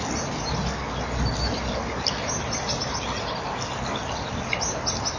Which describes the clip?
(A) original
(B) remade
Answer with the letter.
A